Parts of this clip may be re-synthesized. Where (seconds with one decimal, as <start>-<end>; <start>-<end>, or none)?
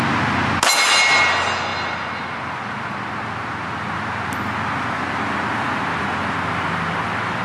none